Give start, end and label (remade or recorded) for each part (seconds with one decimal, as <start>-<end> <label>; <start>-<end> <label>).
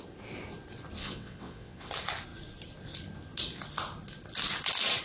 0.0-1.0 recorded; 1.0-1.9 remade; 1.9-5.0 recorded